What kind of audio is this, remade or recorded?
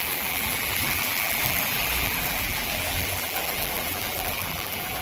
remade